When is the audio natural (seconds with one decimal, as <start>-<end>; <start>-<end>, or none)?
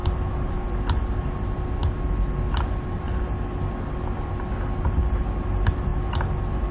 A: 0.0-6.7